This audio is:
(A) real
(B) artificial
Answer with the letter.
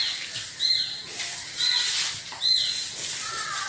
A